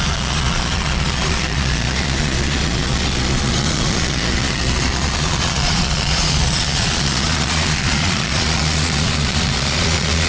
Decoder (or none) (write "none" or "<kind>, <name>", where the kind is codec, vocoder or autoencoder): vocoder, Vocos